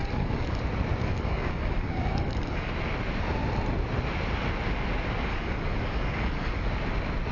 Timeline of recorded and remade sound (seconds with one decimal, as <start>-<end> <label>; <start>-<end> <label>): 0.0-0.6 remade; 0.6-1.0 recorded; 1.0-2.7 remade; 2.7-5.3 recorded; 5.3-6.7 remade; 6.7-7.3 recorded

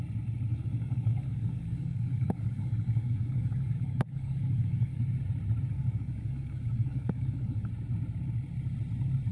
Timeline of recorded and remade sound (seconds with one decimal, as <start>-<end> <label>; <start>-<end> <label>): 0.0-0.5 recorded; 0.5-5.0 remade; 5.0-5.7 recorded; 5.7-7.7 remade; 7.7-9.3 recorded